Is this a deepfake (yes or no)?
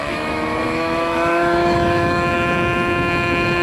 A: yes